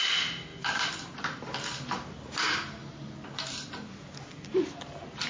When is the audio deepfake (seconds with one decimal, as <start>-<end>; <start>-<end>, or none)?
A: none